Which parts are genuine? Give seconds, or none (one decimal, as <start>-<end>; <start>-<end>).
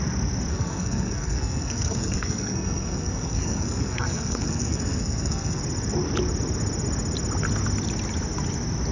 0.0-0.5; 5.6-8.9